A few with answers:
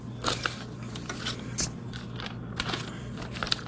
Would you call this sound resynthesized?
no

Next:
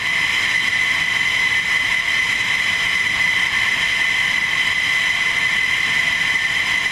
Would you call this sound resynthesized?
no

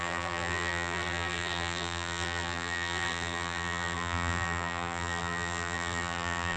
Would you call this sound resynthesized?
yes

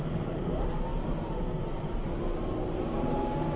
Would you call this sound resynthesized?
yes